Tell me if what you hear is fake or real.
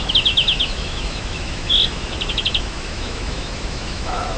fake